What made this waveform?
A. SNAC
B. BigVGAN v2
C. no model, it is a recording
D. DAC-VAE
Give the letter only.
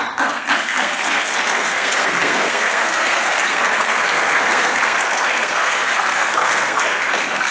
A